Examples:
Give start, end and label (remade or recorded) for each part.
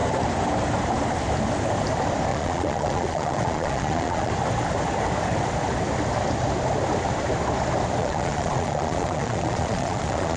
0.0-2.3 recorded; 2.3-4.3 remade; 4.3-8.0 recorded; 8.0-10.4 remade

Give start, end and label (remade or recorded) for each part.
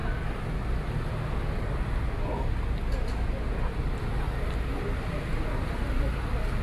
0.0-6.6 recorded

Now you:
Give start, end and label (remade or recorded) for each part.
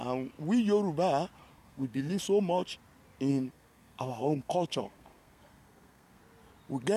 0.0-1.5 recorded; 1.5-2.2 remade; 2.2-3.3 recorded; 3.3-6.2 remade; 6.2-7.0 recorded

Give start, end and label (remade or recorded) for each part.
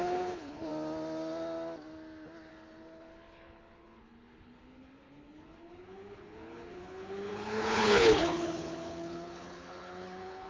0.0-0.7 remade; 0.7-2.5 recorded; 2.5-10.5 remade